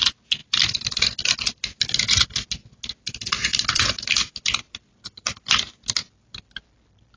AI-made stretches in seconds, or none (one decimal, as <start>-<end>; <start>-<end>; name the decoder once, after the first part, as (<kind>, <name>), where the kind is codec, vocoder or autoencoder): 0.4-1.4 (vocoder, BigVGAN v2)